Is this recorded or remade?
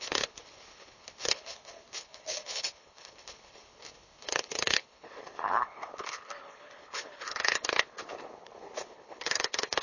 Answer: remade